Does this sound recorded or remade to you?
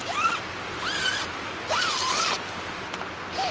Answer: recorded